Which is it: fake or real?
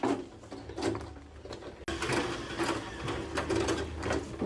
real